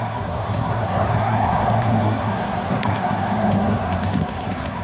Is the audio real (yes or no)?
no